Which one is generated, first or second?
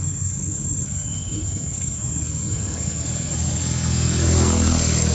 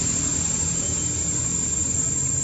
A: first